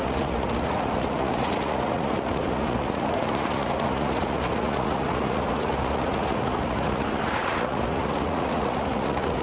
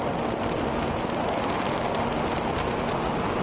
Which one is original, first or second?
second